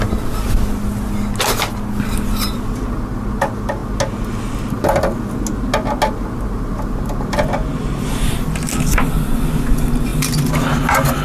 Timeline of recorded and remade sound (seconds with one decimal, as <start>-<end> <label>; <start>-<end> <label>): 0.0-11.2 recorded